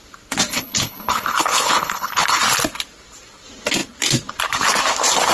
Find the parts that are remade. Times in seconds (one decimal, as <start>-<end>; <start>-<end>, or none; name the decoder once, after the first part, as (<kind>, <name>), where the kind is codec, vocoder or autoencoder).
0.5-2.4 (codec, HILCodec)